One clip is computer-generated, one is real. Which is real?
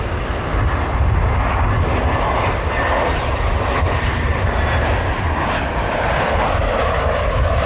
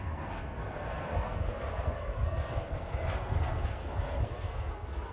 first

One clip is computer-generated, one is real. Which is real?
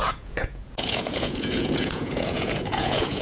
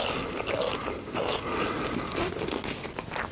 second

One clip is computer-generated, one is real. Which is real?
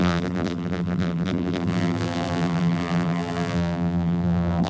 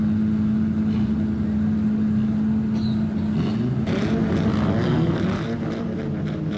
second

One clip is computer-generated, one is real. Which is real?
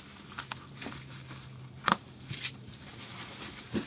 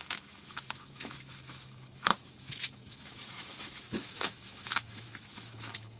first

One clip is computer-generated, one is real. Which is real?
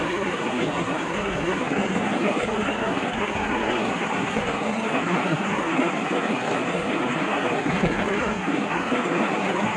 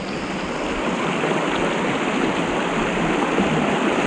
second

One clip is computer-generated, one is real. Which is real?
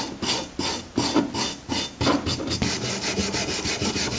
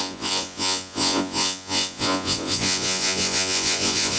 first